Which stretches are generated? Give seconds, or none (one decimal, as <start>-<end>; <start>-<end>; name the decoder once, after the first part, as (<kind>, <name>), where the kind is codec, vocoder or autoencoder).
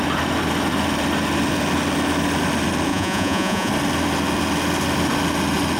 2.9-3.7 (vocoder, Vocos)